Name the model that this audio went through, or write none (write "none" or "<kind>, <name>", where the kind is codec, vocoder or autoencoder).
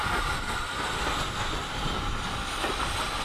none